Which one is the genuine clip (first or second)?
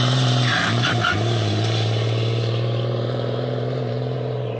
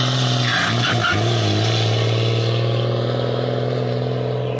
second